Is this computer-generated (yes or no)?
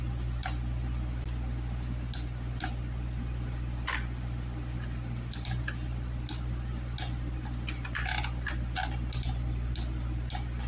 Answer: no